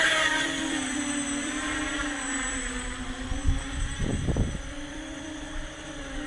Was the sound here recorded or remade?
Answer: remade